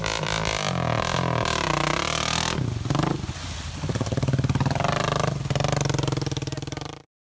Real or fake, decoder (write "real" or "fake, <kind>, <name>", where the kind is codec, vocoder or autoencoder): real